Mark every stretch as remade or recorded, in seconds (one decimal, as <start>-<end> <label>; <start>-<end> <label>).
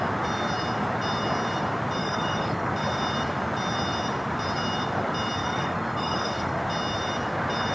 0.0-2.0 recorded; 2.0-2.7 remade; 2.7-5.4 recorded; 5.4-6.6 remade; 6.6-7.7 recorded